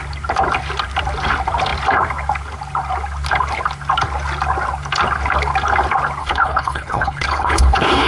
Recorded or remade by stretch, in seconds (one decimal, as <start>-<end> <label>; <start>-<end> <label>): 0.0-6.2 recorded; 6.2-8.1 remade